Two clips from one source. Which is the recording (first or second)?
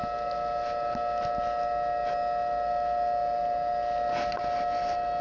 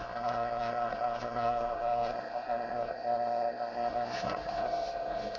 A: first